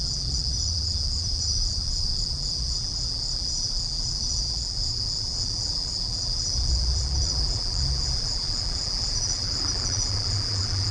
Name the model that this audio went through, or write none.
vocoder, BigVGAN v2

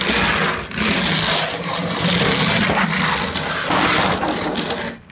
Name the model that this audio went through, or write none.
none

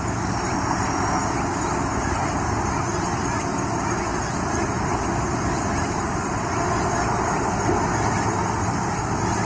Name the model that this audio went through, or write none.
none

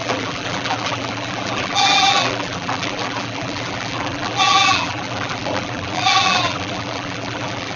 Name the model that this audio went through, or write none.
vocoder, BigVGAN v2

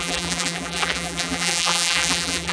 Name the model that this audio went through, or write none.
vocoder, BigVGAN v2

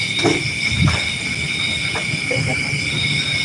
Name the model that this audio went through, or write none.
none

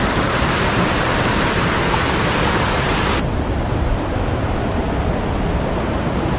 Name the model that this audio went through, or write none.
vocoder, BigVGAN v2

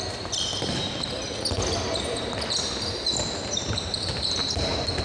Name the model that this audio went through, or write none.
none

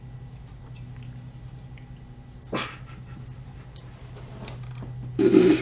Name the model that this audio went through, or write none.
none